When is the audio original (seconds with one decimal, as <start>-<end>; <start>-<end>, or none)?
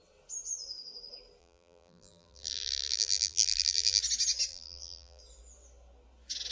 0.0-1.4; 4.0-4.5; 5.2-6.5